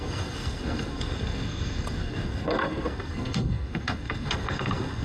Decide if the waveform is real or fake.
fake